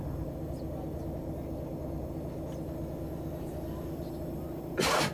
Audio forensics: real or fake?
real